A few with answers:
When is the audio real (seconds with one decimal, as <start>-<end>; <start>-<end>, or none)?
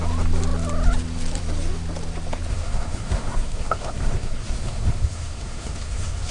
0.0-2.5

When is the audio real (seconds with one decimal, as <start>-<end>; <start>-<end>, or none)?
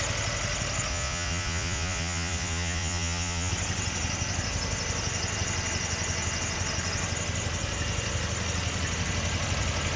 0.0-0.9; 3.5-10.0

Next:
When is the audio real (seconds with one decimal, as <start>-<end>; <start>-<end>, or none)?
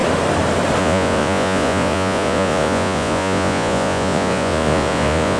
0.0-0.8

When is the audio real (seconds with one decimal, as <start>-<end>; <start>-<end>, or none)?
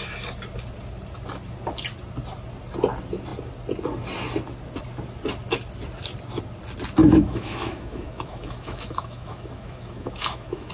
0.0-7.0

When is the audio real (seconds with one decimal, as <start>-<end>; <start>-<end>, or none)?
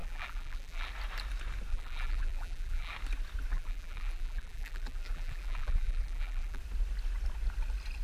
0.9-1.7; 2.9-3.5; 6.6-8.0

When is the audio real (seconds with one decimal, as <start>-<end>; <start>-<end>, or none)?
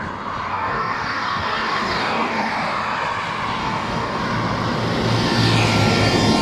0.0-0.5; 2.5-3.6; 4.2-6.4